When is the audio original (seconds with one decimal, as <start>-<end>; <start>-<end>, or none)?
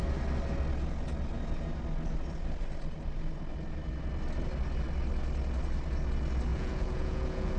0.0-6.5